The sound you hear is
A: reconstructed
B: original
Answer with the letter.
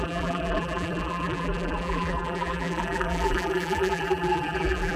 A